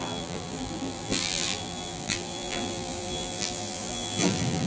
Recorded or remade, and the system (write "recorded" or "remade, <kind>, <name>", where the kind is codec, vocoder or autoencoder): remade, vocoder, BigVGAN v2